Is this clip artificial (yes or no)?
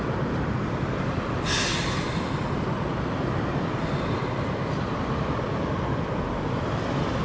no